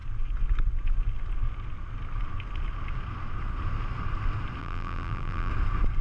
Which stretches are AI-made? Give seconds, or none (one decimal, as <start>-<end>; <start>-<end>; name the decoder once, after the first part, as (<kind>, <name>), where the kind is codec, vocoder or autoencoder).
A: 4.6-5.5 (vocoder, BigVGAN v2)